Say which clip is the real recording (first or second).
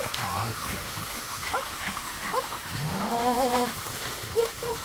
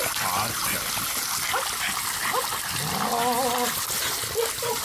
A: second